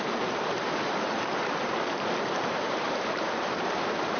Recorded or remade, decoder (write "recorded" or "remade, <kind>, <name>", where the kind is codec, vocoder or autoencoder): remade, vocoder, BigVGAN v2